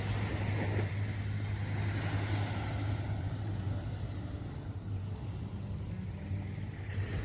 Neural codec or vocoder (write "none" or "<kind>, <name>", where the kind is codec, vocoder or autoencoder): none